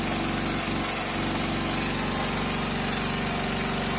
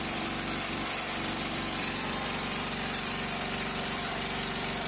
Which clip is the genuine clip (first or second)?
first